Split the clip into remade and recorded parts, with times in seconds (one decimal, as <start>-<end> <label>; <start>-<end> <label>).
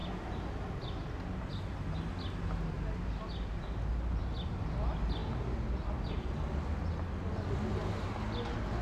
0.0-8.8 recorded